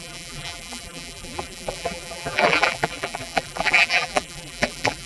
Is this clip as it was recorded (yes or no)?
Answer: no